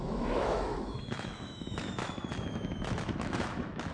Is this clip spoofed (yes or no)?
yes